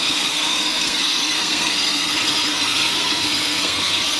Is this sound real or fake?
fake